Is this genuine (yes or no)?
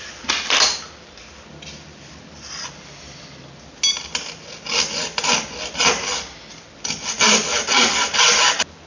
yes